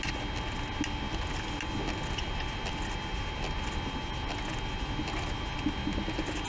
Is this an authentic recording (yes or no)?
yes